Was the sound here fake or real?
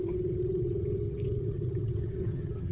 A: fake